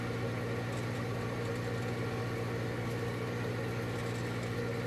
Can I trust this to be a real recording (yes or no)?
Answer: yes